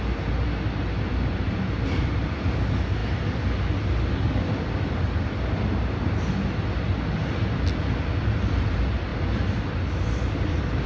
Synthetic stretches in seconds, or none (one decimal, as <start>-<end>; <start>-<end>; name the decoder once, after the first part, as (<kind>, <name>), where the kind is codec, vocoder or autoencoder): 1.1-2.5 (vocoder, BigVGAN v2)